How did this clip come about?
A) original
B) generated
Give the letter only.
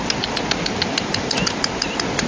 A